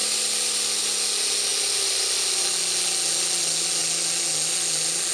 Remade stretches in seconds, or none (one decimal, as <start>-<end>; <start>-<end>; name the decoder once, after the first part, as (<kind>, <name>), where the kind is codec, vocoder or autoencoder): none